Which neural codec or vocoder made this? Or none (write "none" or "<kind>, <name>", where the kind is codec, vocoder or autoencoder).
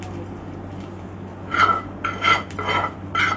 none